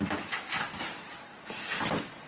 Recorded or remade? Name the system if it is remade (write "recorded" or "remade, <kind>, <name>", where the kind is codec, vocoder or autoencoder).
recorded